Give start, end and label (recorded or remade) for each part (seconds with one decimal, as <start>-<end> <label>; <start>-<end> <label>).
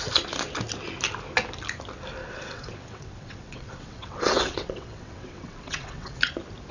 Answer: 0.0-2.2 recorded; 2.2-6.2 remade; 6.2-6.7 recorded